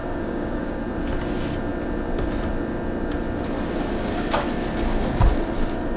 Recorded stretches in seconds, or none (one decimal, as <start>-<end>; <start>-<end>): 0.8-6.0